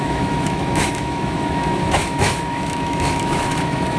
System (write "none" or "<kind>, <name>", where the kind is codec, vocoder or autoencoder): autoencoder, DAC-VAE